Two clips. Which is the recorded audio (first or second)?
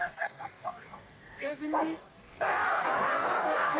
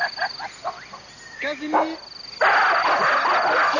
second